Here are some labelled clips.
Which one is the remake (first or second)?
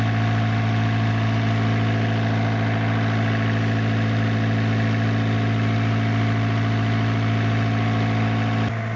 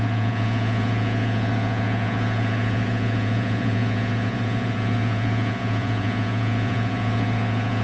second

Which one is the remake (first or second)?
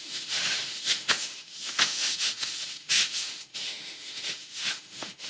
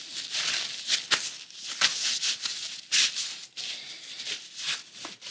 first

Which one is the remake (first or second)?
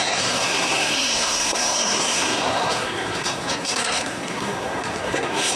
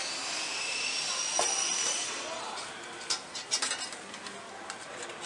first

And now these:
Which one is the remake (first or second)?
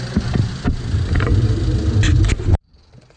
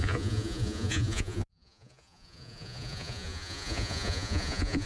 second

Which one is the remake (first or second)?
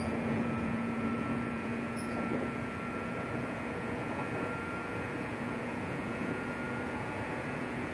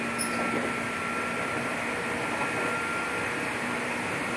first